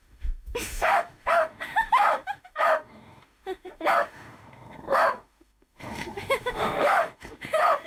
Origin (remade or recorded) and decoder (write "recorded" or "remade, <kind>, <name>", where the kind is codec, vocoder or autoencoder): remade, autoencoder, DAC-VAE